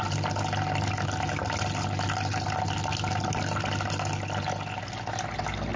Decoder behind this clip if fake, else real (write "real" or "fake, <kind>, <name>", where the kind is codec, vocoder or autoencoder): real